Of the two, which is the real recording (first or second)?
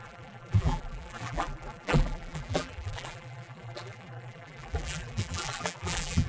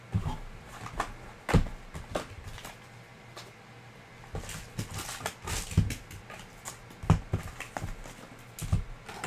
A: second